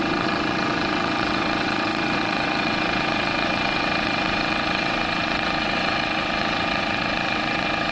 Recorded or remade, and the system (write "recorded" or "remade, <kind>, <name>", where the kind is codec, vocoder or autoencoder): remade, vocoder, WaveNeXt